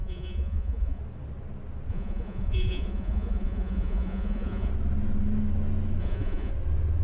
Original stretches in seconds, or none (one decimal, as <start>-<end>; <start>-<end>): 1.0-1.9; 4.7-6.0; 6.5-7.0